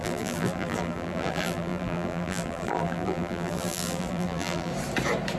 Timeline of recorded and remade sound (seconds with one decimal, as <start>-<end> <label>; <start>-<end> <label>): 0.0-4.7 remade; 4.7-5.4 recorded